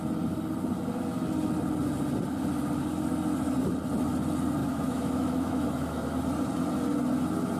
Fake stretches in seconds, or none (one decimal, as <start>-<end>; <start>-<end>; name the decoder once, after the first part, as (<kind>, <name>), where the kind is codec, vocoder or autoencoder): 4.6-6.2 (autoencoder, DAC-VAE)